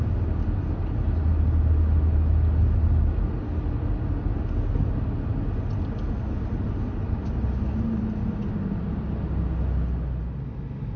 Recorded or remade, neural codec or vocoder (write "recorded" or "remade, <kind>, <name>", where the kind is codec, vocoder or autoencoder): recorded